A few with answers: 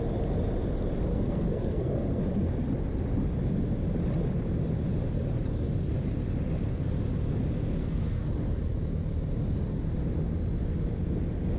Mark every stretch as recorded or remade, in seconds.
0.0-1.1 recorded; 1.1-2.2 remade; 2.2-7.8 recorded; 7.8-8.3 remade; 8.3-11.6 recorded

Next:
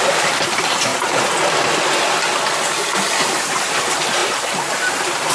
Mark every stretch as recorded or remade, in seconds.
0.0-0.9 remade; 0.9-3.8 recorded; 3.8-5.3 remade

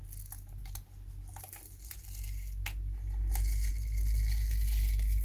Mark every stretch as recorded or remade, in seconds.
0.0-5.2 recorded

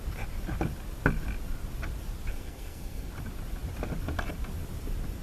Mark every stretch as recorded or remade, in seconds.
0.0-2.3 recorded; 2.3-3.1 remade; 3.1-5.2 recorded